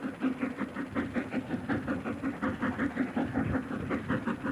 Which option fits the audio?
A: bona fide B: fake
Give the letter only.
A